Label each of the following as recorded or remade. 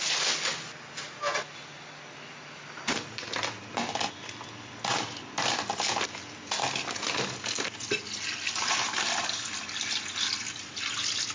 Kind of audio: recorded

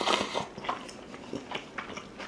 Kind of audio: recorded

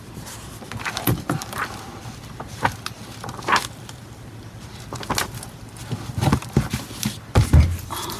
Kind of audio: recorded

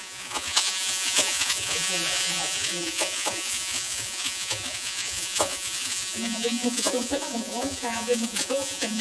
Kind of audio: remade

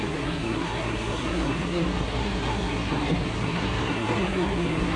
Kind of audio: remade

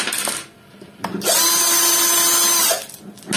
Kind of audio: recorded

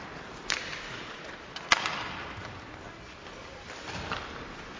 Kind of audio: recorded